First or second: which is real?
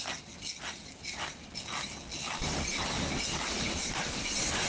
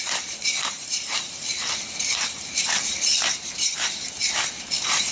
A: first